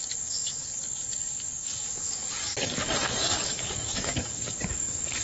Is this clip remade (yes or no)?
yes